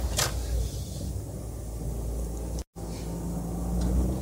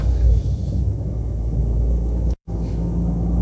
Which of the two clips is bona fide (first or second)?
first